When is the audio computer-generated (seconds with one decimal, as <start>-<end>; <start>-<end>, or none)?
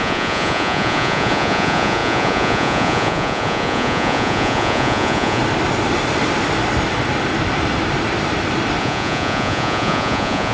0.0-5.4; 8.8-10.5